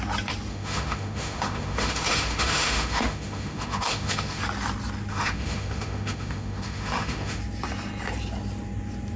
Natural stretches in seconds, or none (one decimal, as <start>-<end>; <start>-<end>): 0.0-0.5; 4.4-5.1; 7.4-9.2